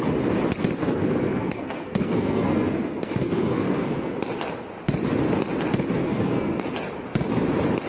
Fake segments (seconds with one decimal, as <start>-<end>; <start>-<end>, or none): 0.8-4.1; 6.0-6.6